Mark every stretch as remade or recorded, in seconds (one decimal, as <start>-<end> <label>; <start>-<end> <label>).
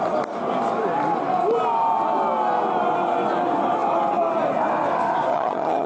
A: 0.0-5.3 recorded; 5.3-5.9 remade